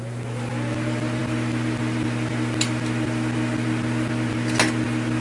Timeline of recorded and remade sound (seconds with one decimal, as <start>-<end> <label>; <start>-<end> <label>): 0.0-5.2 recorded